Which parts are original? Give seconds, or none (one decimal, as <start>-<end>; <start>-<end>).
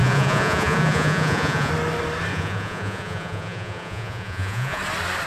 1.7-2.3; 4.8-5.3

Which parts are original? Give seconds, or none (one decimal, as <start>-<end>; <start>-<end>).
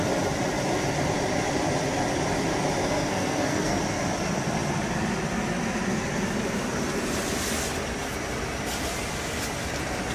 0.0-2.8; 3.8-10.1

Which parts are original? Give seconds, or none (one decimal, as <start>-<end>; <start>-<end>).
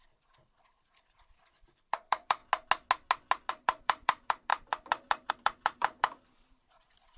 2.4-3.5